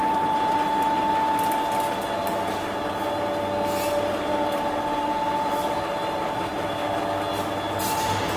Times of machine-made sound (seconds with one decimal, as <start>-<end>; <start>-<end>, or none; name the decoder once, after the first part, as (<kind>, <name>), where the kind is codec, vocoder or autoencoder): 0.0-0.7 (vocoder, BigVGAN v2); 4.1-6.8; 7.8-8.4